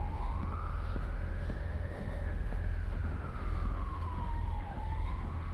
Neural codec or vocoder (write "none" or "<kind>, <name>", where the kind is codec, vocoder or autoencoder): autoencoder, DAC-VAE